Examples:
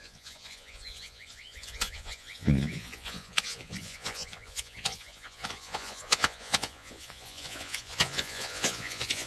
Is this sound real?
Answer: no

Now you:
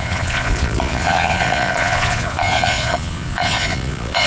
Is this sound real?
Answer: no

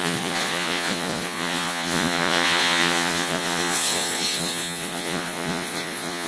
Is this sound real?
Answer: no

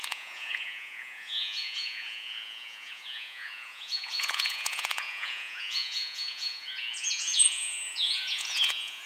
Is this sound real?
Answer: no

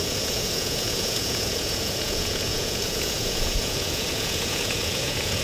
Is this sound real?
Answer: no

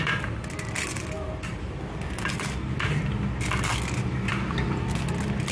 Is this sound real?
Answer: yes